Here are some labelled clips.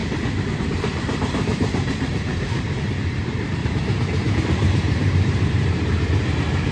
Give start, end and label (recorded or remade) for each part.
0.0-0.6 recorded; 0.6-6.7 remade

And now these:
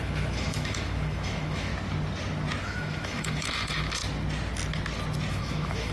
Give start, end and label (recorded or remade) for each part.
0.0-1.7 remade; 1.7-2.6 recorded; 2.6-4.0 remade; 4.0-5.3 recorded; 5.3-5.9 remade

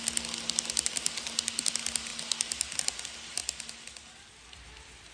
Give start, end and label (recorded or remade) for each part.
0.0-5.1 recorded

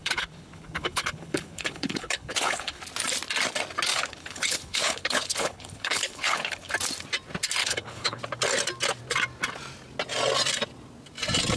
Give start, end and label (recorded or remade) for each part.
0.0-2.8 remade; 2.8-3.9 recorded; 3.9-6.7 remade; 6.7-7.6 recorded; 7.6-8.2 remade; 8.2-11.6 recorded

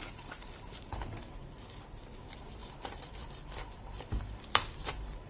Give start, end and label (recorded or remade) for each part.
0.0-0.4 recorded; 0.4-1.3 remade; 1.3-2.6 recorded; 2.6-5.3 remade

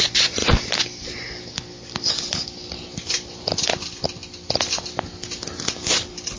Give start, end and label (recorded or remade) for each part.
0.0-6.4 recorded